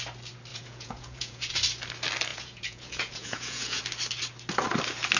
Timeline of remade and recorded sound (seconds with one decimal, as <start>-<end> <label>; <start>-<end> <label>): 0.0-0.5 recorded; 0.5-1.5 remade; 1.5-2.3 recorded; 2.3-3.8 remade; 3.8-5.2 recorded